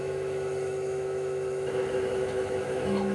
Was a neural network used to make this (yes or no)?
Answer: yes